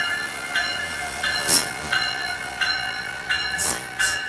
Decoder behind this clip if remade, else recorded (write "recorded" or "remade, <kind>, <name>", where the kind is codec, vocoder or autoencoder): remade, vocoder, Vocos